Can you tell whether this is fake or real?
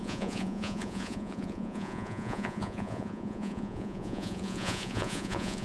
fake